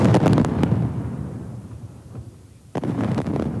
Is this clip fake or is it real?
real